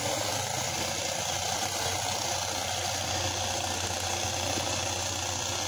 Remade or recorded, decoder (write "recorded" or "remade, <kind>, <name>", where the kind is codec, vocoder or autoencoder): recorded